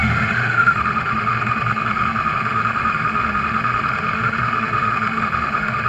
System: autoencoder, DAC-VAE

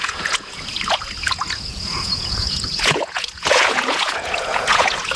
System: vocoder, Vocos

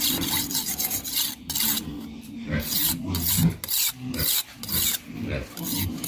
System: none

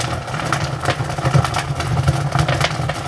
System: none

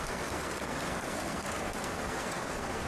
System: codec, SNAC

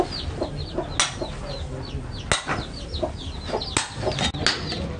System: none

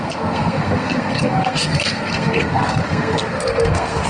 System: codec, SNAC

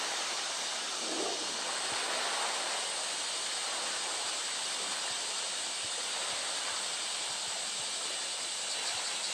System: none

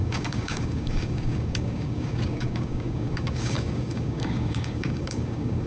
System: codec, DAC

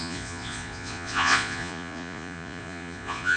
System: vocoder, Vocos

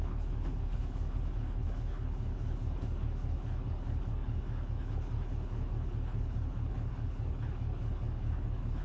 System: codec, HILCodec